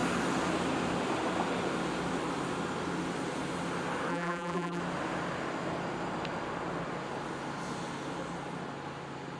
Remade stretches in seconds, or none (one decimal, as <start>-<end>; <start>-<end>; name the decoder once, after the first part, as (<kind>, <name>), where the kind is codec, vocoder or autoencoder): 4.1-4.8 (vocoder, BigVGAN v2)